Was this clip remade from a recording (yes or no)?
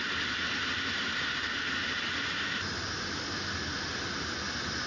no